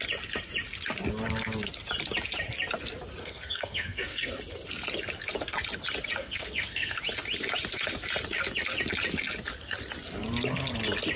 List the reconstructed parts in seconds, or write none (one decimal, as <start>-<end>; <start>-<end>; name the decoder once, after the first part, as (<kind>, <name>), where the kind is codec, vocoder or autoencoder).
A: 3.2-4.3 (codec, SNAC); 6.2-7.0